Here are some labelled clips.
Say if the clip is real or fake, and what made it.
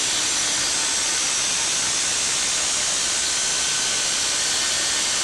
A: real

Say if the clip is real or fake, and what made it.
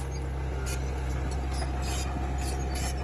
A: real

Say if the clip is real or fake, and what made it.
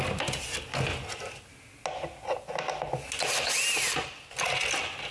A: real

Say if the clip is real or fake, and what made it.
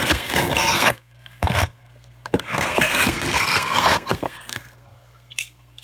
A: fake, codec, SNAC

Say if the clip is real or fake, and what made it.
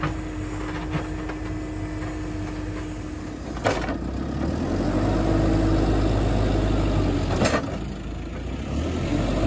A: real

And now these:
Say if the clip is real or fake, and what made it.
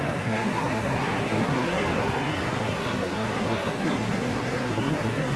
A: fake, codec, SNAC